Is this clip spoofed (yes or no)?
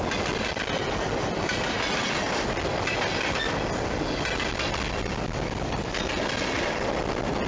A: no